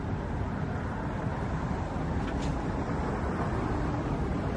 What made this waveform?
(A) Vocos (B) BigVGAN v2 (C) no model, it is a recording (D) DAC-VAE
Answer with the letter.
C